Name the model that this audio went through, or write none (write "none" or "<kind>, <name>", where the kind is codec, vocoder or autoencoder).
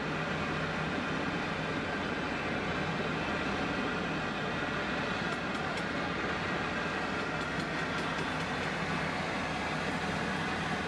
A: none